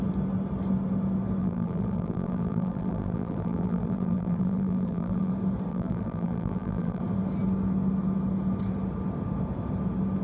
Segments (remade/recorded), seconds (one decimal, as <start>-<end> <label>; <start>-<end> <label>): 0.0-1.4 recorded; 1.4-5.3 remade; 5.3-5.7 recorded; 5.7-7.0 remade; 7.0-10.2 recorded